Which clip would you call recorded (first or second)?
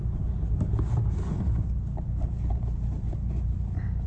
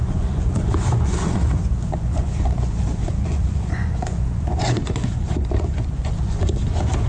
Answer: first